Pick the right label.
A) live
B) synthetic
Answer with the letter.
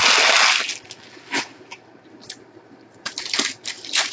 A